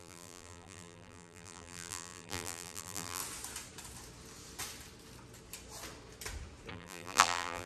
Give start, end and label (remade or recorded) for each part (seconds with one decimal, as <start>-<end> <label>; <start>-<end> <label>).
0.0-3.2 remade; 3.2-6.7 recorded; 6.7-7.7 remade

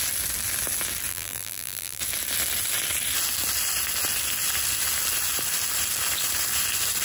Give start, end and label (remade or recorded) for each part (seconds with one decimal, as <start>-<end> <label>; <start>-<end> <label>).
0.0-1.1 recorded; 1.1-2.0 remade; 2.0-7.0 recorded

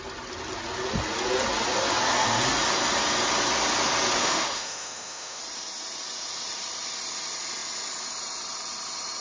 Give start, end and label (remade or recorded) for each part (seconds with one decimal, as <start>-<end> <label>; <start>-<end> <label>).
0.0-4.2 recorded; 4.2-5.4 remade; 5.4-9.2 recorded